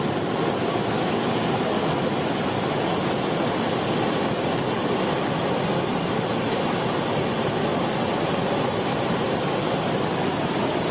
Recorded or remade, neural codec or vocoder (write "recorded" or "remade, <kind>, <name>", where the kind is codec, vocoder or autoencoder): recorded